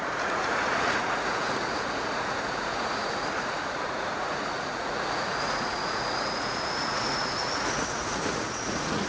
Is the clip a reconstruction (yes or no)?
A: yes